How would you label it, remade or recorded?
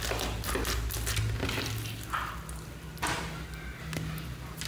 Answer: recorded